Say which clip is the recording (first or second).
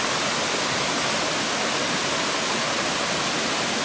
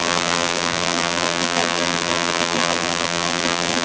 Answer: first